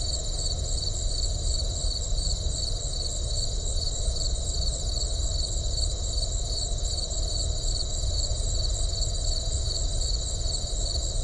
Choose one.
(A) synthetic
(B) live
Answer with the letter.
B